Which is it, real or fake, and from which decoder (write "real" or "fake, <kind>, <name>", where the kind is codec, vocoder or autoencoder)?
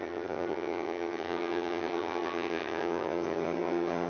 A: fake, vocoder, HiFi-GAN